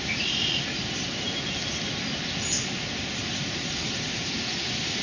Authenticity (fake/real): real